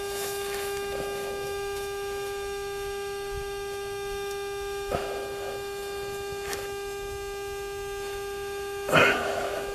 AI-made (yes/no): yes